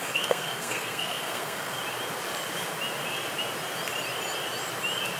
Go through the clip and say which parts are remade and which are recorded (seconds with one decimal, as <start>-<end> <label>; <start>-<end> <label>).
0.0-1.8 remade; 1.8-5.2 recorded